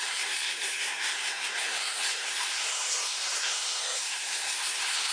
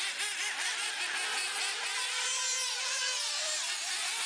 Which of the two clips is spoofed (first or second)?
first